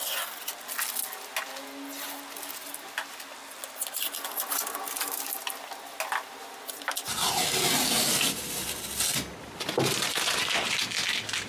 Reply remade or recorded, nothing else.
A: recorded